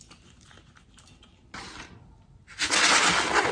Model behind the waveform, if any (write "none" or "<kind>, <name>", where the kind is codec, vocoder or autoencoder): none